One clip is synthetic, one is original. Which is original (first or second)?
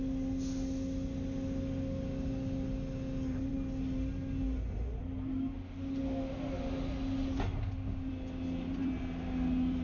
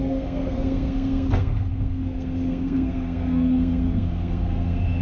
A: first